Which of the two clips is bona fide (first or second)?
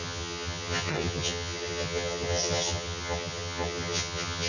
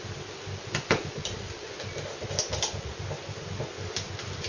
second